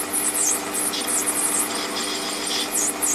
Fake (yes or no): no